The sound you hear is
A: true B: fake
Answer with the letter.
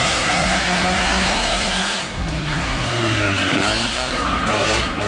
B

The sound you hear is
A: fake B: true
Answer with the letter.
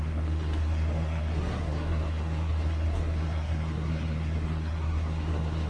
A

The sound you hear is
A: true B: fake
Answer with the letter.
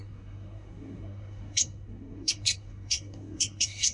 B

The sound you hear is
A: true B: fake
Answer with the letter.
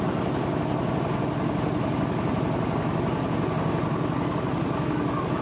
A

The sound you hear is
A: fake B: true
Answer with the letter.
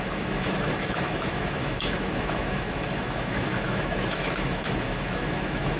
A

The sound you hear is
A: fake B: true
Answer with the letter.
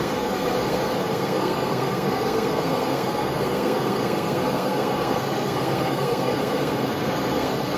A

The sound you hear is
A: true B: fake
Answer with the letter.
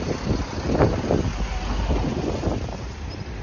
A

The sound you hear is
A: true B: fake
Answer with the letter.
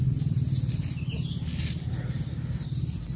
A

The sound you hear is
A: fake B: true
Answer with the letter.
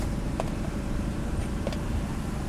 A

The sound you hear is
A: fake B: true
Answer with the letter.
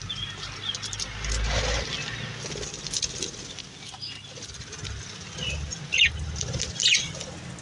B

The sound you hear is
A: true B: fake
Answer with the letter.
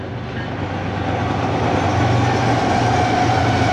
A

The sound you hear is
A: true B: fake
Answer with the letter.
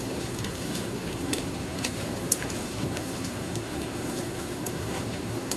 B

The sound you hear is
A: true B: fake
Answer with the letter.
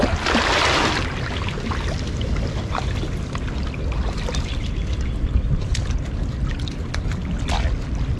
A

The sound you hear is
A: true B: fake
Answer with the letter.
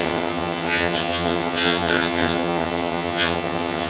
B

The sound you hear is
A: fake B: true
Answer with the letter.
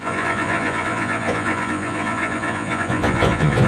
A